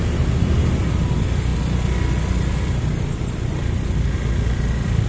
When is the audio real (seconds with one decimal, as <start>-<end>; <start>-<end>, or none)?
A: 0.0-5.1